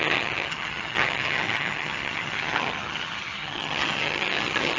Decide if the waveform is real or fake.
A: fake